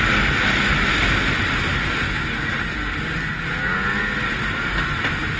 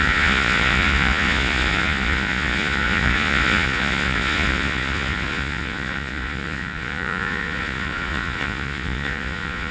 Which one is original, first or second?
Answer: first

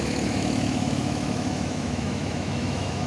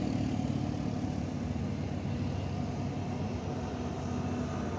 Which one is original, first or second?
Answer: second